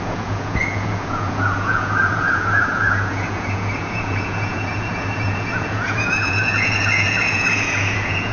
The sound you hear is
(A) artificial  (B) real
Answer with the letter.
A